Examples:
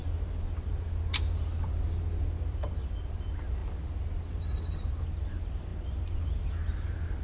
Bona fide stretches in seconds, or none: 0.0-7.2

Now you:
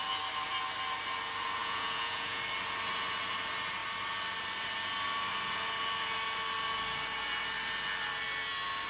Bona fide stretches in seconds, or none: 0.0-1.6; 2.4-8.9

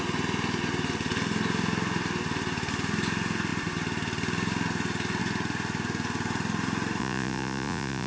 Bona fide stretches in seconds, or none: 0.0-7.0

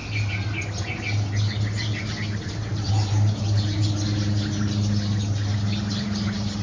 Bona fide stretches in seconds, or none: 0.0-6.6

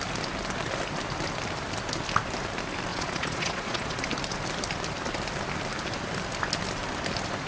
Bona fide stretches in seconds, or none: 0.0-2.9; 4.0-7.5